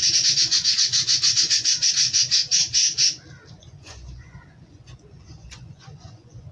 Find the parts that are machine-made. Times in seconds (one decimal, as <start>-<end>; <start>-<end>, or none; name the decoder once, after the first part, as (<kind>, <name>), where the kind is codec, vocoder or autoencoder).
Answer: 0.0-2.9 (vocoder, Vocos); 3.5-6.5